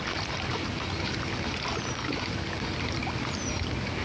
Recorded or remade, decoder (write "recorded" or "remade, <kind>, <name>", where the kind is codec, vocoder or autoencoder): recorded